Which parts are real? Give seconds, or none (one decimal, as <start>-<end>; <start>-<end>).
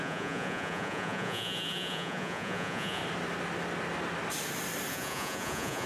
3.0-4.9